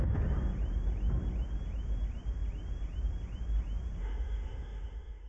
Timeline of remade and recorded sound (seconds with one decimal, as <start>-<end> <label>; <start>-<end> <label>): 0.0-4.0 recorded; 4.0-5.3 remade